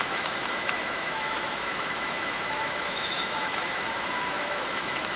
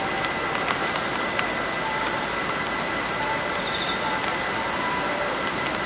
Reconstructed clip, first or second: first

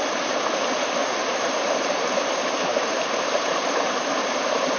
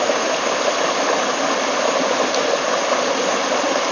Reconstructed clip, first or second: first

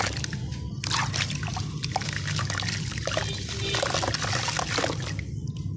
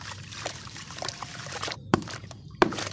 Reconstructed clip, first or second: second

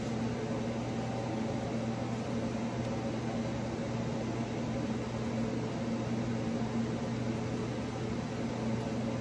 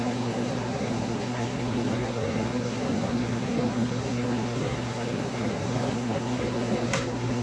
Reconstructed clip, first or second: second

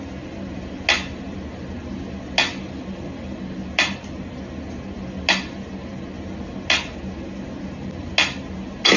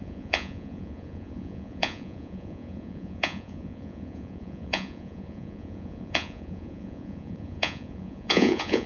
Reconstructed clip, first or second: second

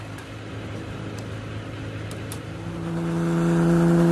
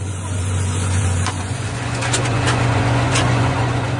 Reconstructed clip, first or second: second